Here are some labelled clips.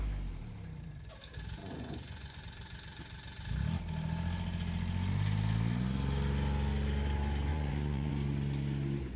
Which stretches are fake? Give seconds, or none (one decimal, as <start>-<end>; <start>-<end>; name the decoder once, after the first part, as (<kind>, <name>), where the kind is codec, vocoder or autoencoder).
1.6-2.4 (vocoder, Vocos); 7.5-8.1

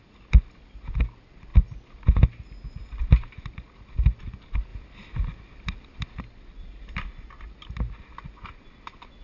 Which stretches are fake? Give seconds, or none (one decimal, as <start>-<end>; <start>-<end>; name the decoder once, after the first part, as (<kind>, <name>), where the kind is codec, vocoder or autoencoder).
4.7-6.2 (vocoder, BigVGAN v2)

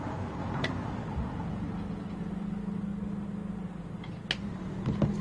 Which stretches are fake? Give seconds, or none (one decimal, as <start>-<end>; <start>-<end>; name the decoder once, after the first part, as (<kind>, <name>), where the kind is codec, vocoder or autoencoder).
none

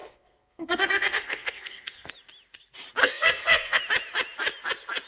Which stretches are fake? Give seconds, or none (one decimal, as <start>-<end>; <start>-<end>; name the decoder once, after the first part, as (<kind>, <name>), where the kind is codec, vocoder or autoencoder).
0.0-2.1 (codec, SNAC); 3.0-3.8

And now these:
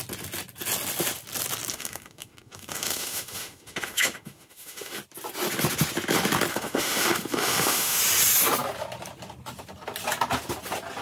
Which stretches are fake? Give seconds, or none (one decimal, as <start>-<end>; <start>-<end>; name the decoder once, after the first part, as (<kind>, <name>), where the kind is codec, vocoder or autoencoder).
1.7-5.0 (autoencoder, DAC-VAE); 6.5-8.0